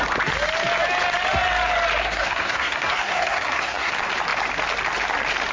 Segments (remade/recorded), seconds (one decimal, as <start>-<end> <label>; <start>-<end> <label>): 0.0-2.0 recorded; 2.0-3.9 remade; 3.9-5.5 recorded